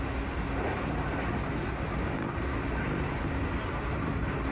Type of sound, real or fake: real